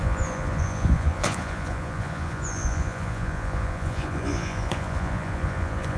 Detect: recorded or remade remade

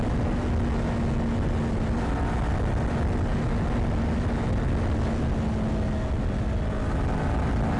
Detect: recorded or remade recorded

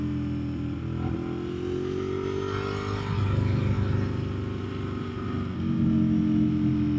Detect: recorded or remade recorded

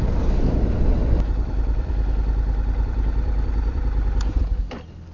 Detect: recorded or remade remade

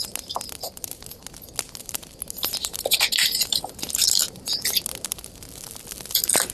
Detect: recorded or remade recorded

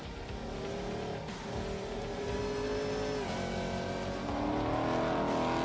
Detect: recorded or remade recorded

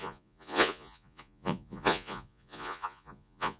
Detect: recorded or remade remade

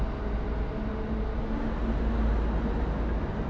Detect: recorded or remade recorded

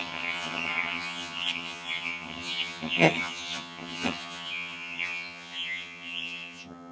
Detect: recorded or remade remade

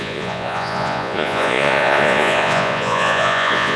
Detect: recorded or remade remade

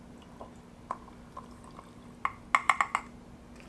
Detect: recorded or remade recorded